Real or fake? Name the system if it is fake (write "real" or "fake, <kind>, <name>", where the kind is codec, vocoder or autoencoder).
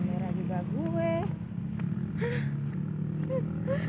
real